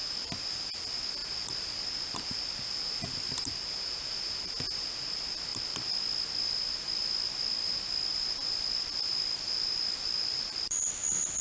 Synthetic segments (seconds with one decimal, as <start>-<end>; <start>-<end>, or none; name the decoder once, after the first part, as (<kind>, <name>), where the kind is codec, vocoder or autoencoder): 8.1-10.9 (vocoder, BigVGAN v2)